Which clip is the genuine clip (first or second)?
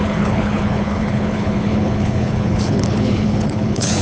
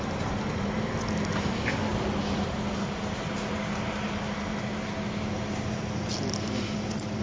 second